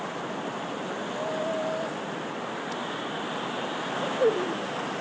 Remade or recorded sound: recorded